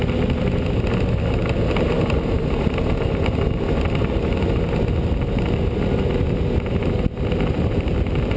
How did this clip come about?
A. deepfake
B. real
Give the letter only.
B